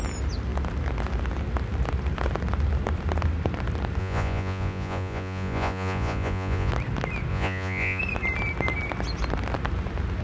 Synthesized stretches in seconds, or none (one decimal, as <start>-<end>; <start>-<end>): 4.0-6.7; 7.3-8.0